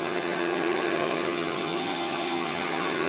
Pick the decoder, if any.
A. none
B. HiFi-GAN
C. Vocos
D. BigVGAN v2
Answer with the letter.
B